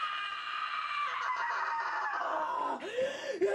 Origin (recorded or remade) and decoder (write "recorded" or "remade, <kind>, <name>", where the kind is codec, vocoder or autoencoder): recorded